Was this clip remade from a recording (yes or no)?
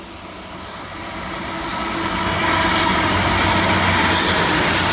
no